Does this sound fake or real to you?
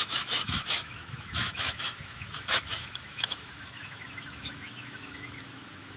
fake